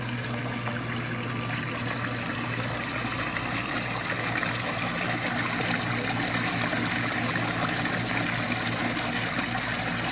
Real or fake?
real